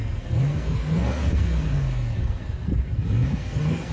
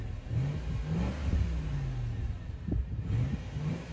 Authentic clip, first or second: second